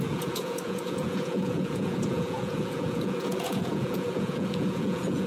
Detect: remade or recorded remade